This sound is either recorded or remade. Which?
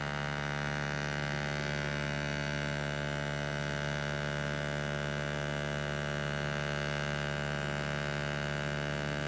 recorded